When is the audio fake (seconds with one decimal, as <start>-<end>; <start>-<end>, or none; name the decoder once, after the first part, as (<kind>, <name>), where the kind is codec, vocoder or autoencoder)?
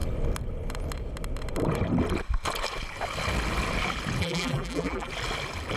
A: 4.2-5.1 (vocoder, BigVGAN v2)